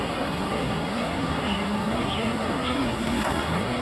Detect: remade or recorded remade